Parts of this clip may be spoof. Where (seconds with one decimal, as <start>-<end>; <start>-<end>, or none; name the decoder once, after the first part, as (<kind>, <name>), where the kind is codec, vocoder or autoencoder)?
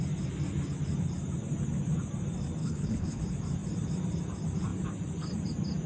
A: 2.6-3.2 (codec, HILCodec)